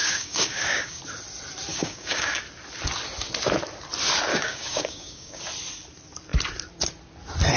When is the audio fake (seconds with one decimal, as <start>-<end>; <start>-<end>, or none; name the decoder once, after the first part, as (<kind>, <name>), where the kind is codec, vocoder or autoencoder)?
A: 0.0-1.0 (codec, DAC); 1.7-2.4; 4.3-5.4